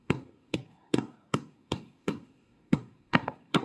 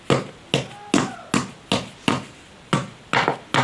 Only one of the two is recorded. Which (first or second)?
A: second